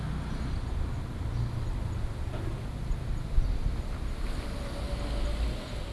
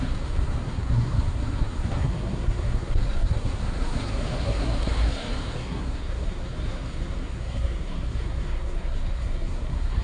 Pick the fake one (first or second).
second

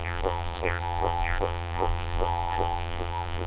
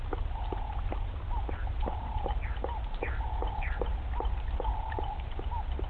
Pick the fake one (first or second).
first